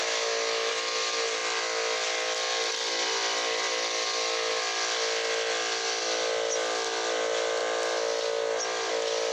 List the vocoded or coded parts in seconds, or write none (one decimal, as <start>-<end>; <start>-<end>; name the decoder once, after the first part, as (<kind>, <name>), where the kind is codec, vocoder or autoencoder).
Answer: 0.0-0.7 (autoencoder, DAC-VAE)